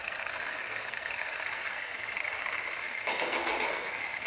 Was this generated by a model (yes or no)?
yes